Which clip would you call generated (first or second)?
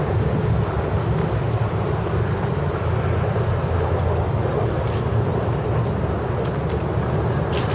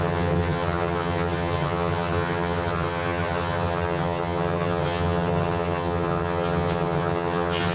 second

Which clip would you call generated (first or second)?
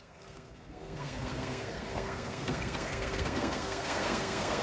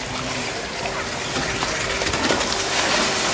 first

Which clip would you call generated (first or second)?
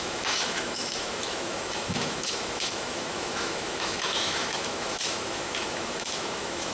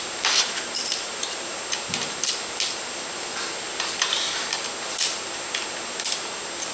first